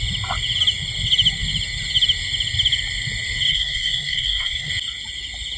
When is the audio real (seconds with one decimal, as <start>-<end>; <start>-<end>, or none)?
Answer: 0.0-3.5; 4.7-5.6